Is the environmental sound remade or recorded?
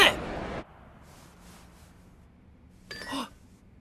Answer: recorded